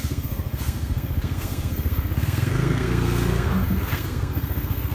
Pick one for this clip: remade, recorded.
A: remade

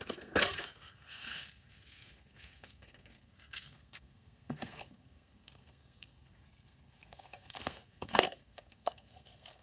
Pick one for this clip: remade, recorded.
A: remade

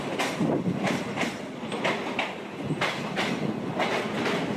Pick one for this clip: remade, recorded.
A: recorded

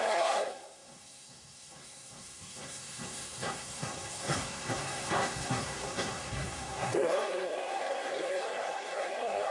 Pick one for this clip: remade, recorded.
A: remade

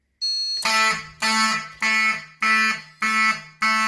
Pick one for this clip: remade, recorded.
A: recorded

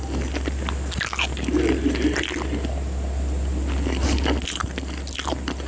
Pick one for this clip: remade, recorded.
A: recorded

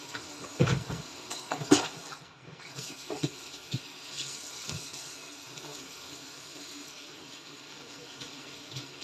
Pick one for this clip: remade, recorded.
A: remade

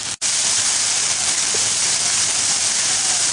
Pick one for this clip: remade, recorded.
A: recorded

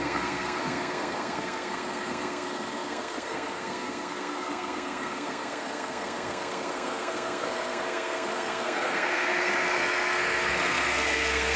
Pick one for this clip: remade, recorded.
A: remade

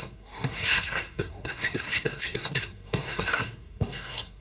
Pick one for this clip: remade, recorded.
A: remade